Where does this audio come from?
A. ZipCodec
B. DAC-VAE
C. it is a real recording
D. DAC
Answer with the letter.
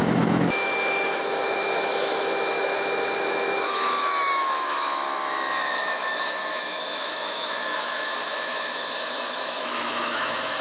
B